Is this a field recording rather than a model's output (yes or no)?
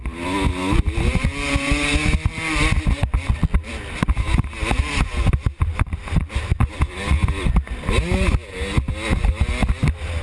yes